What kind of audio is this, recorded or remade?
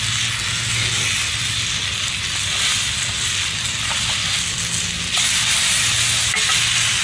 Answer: recorded